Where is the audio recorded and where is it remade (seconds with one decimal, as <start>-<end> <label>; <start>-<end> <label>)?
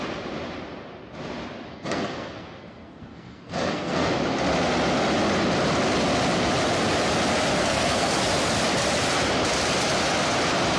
0.0-1.7 recorded; 1.7-4.1 remade; 4.1-7.6 recorded; 7.6-8.2 remade; 8.2-10.8 recorded